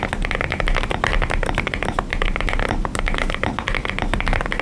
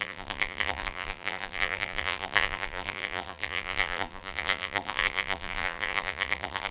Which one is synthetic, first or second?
second